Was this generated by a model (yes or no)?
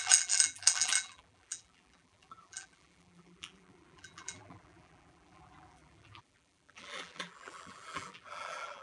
yes